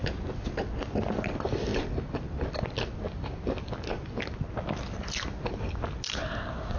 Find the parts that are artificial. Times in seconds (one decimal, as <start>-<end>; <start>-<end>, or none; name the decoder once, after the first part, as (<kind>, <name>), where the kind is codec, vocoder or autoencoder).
none